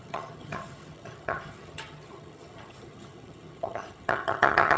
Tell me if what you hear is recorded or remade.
remade